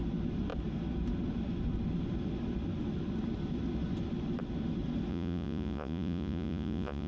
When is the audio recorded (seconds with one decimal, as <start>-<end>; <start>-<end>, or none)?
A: 0.0-5.1